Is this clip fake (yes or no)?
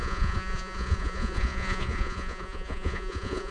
yes